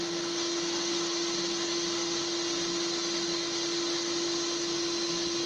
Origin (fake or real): real